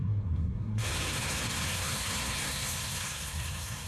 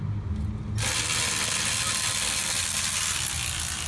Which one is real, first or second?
second